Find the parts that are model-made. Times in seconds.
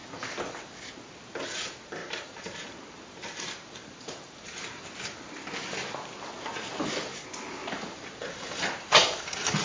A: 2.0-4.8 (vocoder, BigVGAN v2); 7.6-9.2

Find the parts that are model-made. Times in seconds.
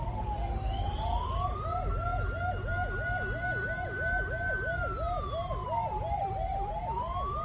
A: 5.6-6.8 (vocoder, BigVGAN v2)